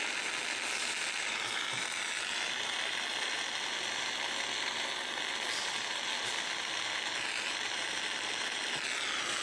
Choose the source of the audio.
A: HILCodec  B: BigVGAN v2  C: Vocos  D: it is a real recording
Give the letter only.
D